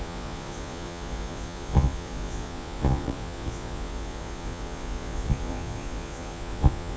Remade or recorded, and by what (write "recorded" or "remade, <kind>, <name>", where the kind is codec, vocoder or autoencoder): remade, vocoder, Vocos